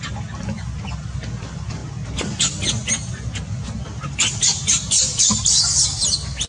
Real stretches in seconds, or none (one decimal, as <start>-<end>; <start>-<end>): 0.0-6.5